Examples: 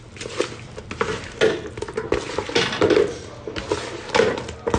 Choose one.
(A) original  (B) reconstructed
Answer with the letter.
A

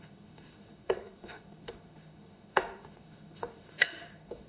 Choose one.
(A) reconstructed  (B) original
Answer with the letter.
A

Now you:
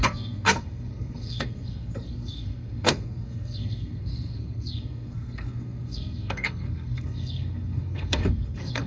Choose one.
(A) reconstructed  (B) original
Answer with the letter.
A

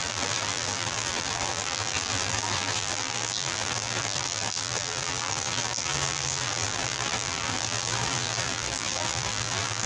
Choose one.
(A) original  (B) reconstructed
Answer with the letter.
B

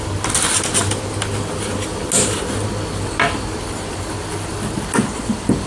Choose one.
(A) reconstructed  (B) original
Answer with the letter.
B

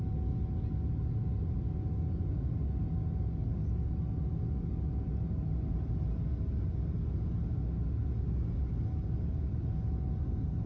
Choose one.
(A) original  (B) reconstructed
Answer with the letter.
A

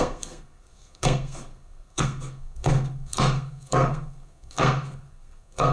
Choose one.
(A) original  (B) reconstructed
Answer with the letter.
B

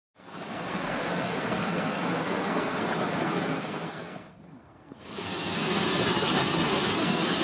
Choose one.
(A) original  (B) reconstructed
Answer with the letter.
B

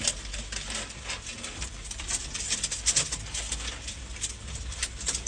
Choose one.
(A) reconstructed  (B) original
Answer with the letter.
B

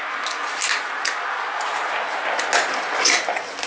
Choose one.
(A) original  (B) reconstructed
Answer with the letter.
A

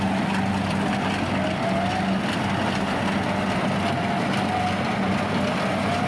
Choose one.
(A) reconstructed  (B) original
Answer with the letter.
B